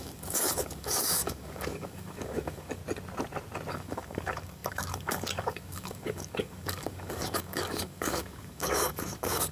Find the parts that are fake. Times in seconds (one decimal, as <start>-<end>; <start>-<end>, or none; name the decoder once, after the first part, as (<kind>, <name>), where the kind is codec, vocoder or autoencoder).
0.0-2.8 (codec, DAC); 3.7-9.5